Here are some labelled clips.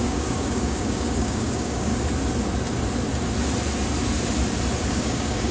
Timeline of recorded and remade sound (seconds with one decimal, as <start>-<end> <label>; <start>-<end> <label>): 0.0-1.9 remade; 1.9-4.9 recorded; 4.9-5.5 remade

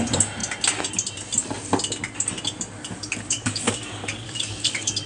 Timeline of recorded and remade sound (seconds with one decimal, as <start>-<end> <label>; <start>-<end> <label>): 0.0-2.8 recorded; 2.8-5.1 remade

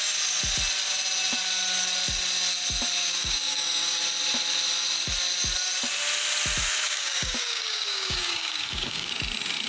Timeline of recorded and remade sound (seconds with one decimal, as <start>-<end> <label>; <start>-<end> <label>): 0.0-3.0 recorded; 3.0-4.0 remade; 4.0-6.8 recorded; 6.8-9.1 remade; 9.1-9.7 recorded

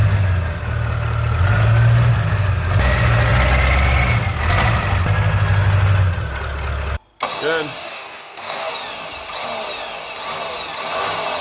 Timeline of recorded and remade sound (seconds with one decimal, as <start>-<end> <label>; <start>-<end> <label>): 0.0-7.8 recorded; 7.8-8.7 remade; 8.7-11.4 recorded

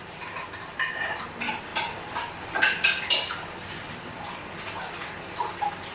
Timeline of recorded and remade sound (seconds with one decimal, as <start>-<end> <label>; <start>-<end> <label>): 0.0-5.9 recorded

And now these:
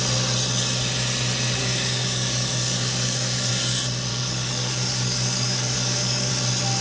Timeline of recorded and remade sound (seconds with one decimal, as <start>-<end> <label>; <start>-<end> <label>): 0.0-1.6 recorded; 1.6-3.5 remade; 3.5-4.1 recorded; 4.1-6.3 remade; 6.3-6.8 recorded

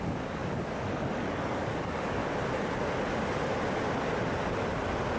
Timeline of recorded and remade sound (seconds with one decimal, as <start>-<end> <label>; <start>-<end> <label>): 0.0-2.2 remade; 2.2-5.2 recorded

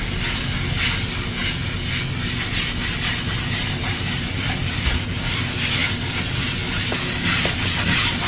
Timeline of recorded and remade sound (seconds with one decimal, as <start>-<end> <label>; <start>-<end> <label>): 0.0-8.3 recorded